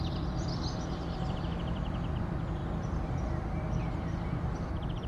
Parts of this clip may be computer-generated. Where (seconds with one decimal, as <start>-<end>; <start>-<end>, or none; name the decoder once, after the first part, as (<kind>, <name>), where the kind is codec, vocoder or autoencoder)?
0.0-2.6 (vocoder, BigVGAN v2); 4.1-5.1

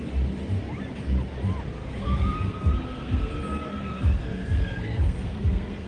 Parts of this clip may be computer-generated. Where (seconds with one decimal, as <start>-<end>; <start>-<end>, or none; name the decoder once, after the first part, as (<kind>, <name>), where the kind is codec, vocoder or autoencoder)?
1.8-3.3 (codec, SNAC); 3.7-5.9